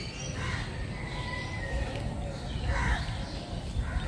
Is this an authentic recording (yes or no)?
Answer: yes